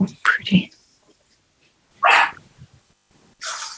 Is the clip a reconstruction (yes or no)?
no